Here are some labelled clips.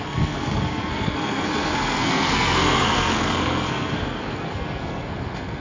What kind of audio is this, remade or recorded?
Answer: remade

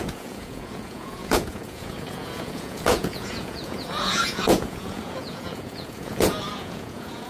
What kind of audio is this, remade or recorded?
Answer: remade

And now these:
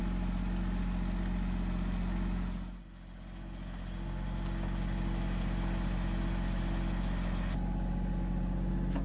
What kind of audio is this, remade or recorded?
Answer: recorded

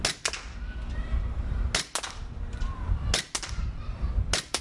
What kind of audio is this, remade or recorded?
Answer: recorded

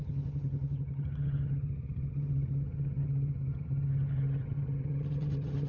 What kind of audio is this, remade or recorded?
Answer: remade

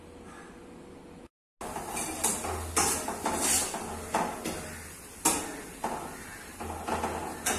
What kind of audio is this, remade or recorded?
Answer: recorded